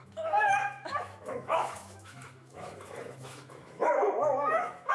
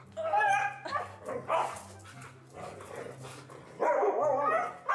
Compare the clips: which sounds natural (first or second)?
second